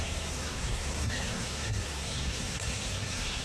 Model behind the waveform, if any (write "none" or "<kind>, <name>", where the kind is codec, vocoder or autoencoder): codec, SNAC